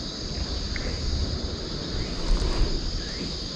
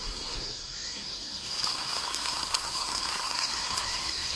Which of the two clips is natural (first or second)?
first